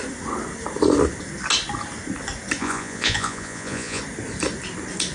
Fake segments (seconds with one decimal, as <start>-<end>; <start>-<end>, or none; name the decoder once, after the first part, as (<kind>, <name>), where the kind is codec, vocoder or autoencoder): 2.6-4.0 (vocoder, Vocos)